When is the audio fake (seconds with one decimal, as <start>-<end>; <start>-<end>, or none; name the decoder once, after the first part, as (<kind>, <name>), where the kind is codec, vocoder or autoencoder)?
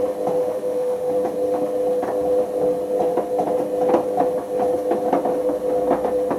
0.4-1.1 (autoencoder, DAC-VAE)